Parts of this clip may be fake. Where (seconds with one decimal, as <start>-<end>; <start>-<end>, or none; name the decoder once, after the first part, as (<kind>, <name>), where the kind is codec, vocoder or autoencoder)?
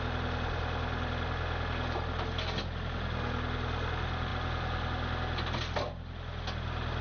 none